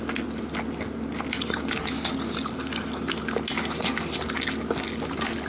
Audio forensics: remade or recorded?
recorded